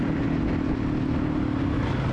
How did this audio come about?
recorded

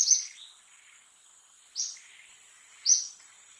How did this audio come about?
recorded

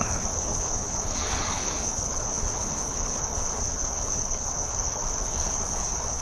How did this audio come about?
remade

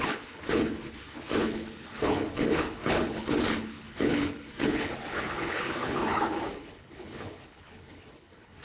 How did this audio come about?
remade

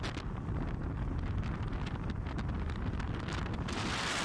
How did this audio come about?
recorded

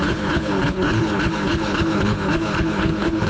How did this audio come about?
remade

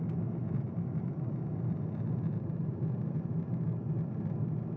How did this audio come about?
recorded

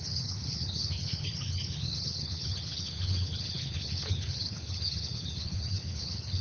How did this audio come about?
remade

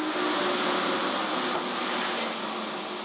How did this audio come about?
recorded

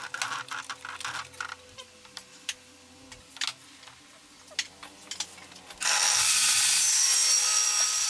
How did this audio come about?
recorded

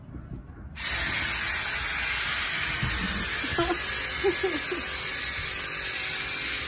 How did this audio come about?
recorded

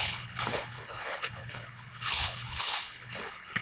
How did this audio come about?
remade